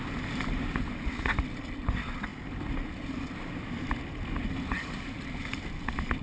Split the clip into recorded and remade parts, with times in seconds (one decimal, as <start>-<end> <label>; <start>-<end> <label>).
0.0-6.2 recorded